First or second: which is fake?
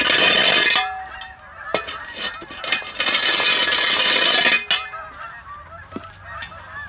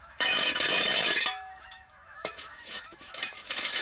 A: second